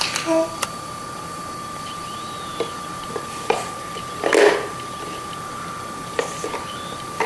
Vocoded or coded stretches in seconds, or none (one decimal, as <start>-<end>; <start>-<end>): none